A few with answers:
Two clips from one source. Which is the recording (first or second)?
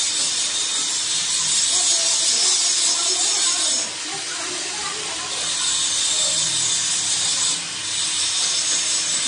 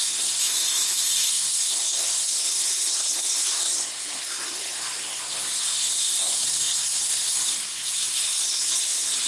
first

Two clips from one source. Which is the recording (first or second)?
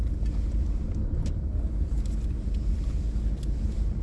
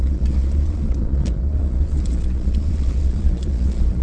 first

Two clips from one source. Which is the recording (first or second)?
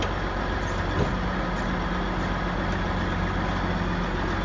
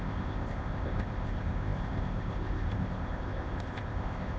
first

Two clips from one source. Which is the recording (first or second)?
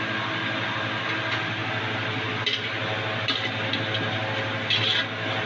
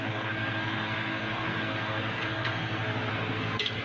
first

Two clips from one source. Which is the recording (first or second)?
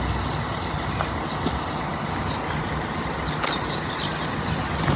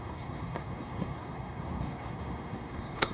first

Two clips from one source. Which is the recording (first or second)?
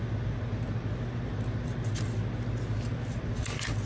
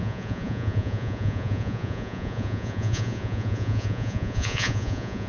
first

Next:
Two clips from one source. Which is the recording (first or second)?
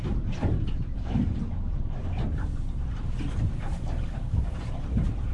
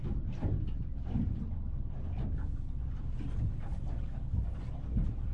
second